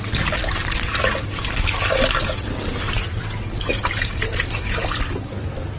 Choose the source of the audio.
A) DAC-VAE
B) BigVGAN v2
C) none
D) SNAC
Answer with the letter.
B